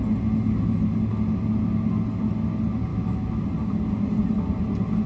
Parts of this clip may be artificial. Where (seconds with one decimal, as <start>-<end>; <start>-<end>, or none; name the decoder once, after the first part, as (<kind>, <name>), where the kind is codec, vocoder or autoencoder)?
2.9-3.4 (autoencoder, DAC-VAE)